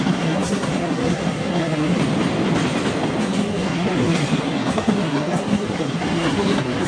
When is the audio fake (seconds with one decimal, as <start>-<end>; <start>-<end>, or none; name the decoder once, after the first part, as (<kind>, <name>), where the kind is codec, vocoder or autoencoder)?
0.0-2.0 (codec, SNAC); 3.2-6.9